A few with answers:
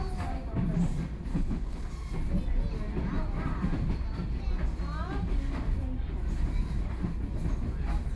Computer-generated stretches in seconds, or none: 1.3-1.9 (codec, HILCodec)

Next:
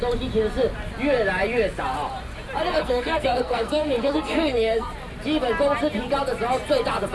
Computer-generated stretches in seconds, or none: 2.7-4.9 (codec, SNAC)

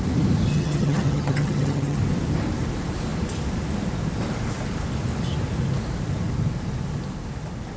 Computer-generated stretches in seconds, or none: 0.5-2.0 (vocoder, HiFi-GAN)